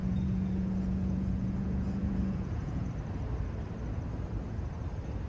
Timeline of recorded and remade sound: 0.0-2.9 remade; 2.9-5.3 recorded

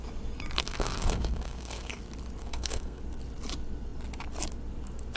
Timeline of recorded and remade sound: 0.0-0.6 recorded; 0.6-2.0 remade; 2.0-2.4 recorded; 2.4-3.0 remade; 3.0-5.2 recorded

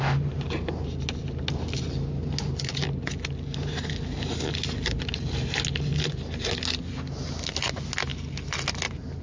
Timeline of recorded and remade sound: 0.0-9.2 recorded

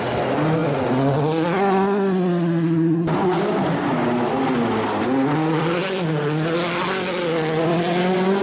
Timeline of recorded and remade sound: 0.0-8.4 recorded

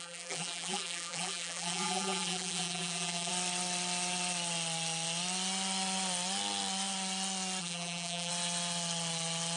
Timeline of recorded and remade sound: 0.0-3.3 remade; 3.3-7.6 recorded; 7.6-8.3 remade; 8.3-9.6 recorded

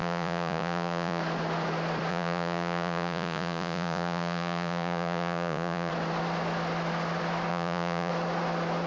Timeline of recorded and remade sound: 0.0-1.2 remade; 1.2-2.1 recorded; 2.1-5.9 remade; 5.9-7.5 recorded; 7.5-8.1 remade; 8.1-8.9 recorded

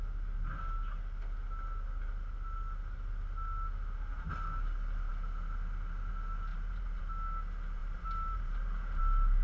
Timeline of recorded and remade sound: 0.0-6.5 recorded; 6.5-7.0 remade; 7.0-7.8 recorded; 7.8-9.0 remade; 9.0-9.4 recorded

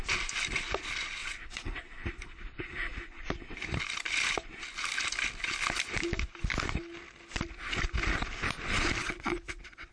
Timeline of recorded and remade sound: 0.0-1.2 recorded; 1.2-1.9 remade; 1.9-9.0 recorded; 9.0-9.9 remade